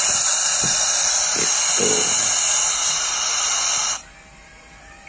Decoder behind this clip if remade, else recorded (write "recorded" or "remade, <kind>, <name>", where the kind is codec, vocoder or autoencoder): recorded